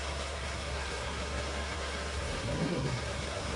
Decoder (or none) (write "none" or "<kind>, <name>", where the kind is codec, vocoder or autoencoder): codec, SNAC